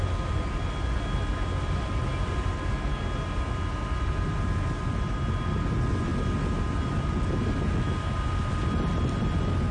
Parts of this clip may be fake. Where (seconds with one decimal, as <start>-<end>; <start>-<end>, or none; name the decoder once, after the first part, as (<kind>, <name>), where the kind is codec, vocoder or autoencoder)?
none